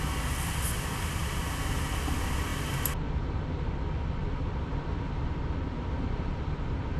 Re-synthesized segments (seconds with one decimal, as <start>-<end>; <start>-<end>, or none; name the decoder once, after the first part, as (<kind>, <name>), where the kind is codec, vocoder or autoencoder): none